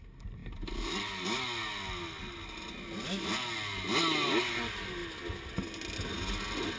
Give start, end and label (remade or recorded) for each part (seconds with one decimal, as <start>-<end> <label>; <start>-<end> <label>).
0.0-6.8 recorded